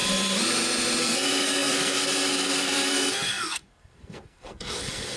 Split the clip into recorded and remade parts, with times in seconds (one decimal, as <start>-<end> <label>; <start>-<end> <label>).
0.0-1.0 recorded; 1.0-5.2 remade